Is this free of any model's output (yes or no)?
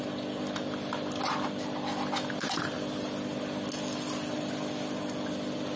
yes